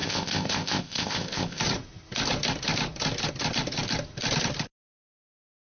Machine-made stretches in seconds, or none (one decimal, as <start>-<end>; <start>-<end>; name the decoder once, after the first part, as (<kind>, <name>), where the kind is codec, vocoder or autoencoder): 0.0-1.6 (codec, ZipCodec)